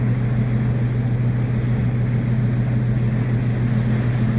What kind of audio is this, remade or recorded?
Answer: recorded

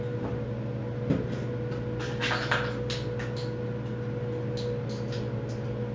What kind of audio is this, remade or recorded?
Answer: recorded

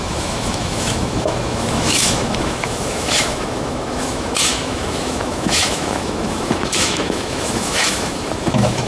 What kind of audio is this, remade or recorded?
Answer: remade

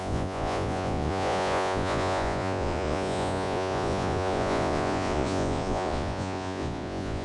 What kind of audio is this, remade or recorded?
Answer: remade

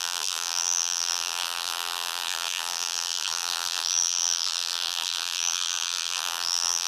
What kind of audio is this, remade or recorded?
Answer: remade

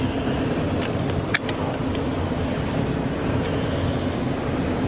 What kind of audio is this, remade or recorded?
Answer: recorded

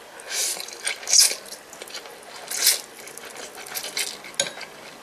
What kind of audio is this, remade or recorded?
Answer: recorded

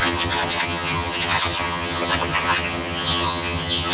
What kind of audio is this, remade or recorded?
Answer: remade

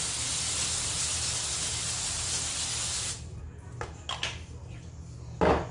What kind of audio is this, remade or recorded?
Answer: recorded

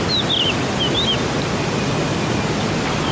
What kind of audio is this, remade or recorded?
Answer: recorded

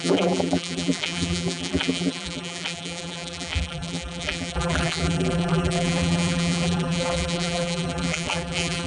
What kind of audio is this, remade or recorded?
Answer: remade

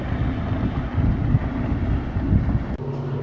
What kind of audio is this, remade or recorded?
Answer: recorded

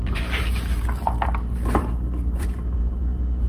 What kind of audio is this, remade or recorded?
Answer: remade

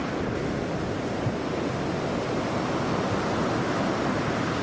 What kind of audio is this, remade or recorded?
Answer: recorded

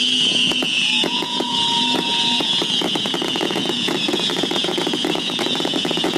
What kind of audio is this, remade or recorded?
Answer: remade